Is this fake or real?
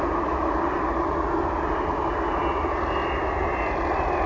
real